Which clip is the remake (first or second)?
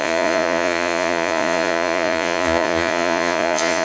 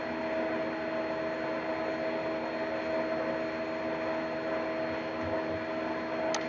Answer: first